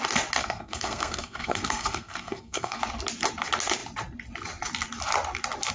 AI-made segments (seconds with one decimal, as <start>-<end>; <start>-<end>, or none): 0.4-2.8